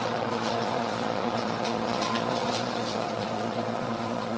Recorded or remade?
remade